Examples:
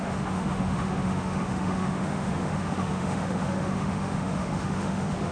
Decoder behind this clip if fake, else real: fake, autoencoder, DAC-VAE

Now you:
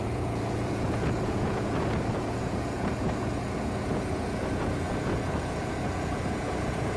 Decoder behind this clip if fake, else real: fake, vocoder, Vocos